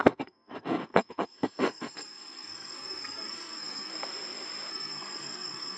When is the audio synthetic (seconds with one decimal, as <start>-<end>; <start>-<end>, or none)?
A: 0.0-3.9; 4.7-5.8